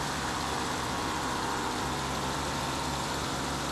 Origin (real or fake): real